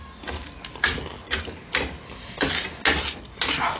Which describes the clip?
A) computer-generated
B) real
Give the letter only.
B